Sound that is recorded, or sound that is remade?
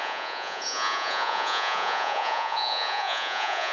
remade